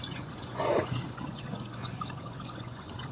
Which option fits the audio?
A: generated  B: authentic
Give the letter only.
A